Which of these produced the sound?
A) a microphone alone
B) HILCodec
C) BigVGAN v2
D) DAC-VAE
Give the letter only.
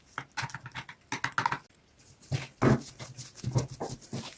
A